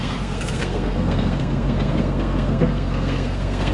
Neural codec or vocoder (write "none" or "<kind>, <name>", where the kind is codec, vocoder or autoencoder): codec, SNAC